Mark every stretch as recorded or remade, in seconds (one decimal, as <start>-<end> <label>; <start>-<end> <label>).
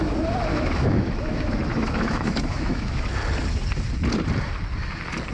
0.0-0.5 recorded; 0.5-3.0 remade; 3.0-5.3 recorded